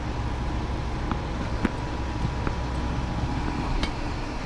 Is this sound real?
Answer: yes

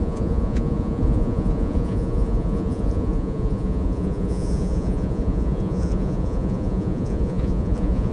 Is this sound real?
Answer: no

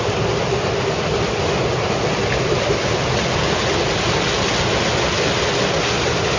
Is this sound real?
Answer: yes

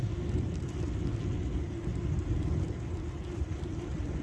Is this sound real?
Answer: yes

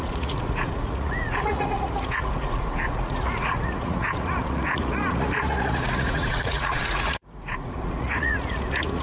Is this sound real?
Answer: no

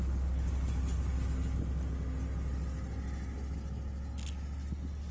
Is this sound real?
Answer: yes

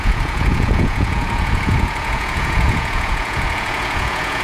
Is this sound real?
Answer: no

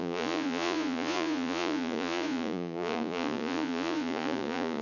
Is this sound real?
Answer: no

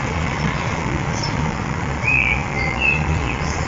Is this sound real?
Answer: no